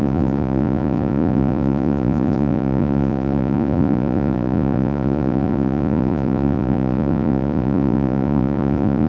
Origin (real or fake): fake